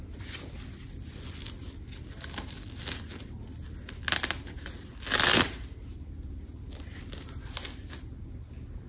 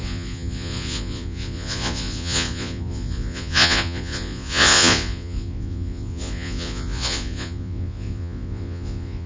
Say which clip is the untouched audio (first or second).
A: first